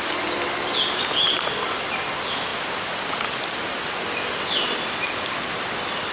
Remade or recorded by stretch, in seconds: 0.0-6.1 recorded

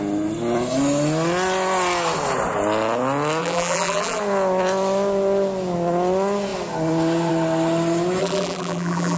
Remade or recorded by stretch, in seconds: 0.0-3.4 recorded; 3.4-4.2 remade; 4.2-8.2 recorded; 8.2-9.2 remade

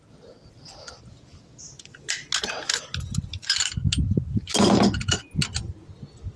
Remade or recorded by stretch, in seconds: 0.0-6.4 recorded

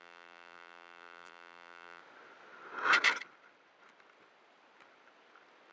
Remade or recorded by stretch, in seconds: 0.0-2.0 remade; 2.0-5.7 recorded